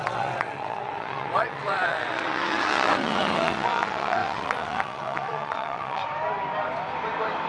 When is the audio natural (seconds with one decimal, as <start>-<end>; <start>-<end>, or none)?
6.0-7.5